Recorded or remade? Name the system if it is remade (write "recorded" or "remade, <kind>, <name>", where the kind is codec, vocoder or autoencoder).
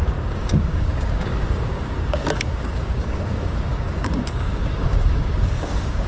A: remade, codec, DAC